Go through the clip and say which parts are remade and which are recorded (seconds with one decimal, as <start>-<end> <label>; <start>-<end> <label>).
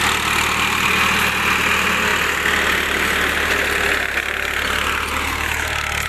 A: 0.0-6.1 recorded